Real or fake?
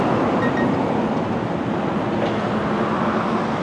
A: real